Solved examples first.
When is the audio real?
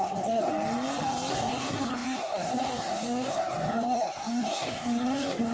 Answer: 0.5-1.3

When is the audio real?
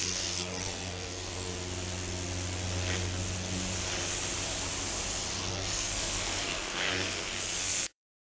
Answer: 1.5-5.5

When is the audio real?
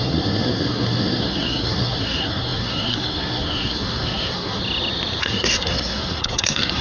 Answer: 4.6-5.2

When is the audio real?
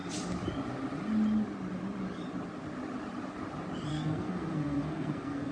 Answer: 0.0-3.9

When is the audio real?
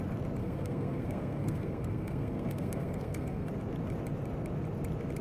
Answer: 0.0-0.4; 3.5-5.2